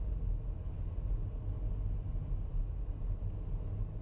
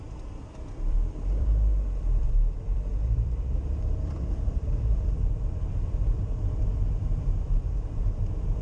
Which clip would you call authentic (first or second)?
first